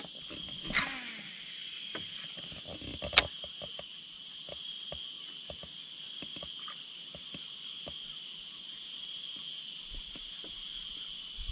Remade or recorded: recorded